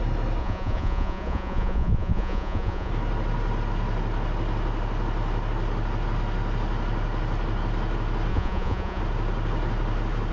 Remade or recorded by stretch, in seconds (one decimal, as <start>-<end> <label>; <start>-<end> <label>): 0.0-0.4 recorded; 0.4-2.9 remade; 2.9-8.3 recorded; 8.3-9.0 remade; 9.0-10.3 recorded